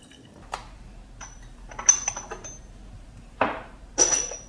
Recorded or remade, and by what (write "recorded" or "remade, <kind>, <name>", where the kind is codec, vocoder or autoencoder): recorded